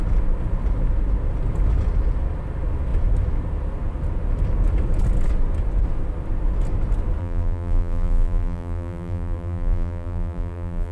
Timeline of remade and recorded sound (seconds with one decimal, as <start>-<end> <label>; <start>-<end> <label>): 0.0-7.2 recorded; 7.2-10.9 remade